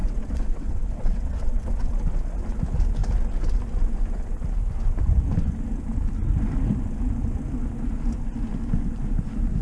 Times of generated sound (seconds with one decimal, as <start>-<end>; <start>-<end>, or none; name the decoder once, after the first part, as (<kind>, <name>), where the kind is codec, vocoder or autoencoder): 0.0-1.9 (vocoder, WaveNeXt)